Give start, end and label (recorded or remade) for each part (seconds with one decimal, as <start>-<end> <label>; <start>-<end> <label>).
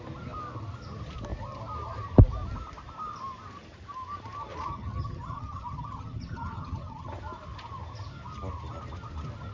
0.0-4.7 recorded; 4.7-7.1 remade; 7.1-9.5 recorded